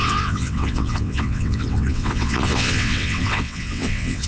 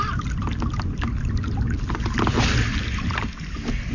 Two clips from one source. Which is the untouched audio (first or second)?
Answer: second